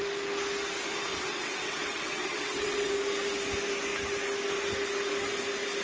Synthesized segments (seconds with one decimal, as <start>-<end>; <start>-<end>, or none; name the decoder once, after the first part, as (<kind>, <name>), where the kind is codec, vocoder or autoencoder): 1.1-2.9 (vocoder, WaveNeXt)